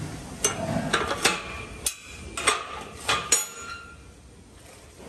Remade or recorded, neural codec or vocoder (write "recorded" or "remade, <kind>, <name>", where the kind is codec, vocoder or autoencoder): recorded